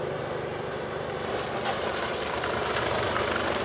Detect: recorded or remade remade